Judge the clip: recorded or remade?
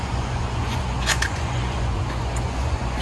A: remade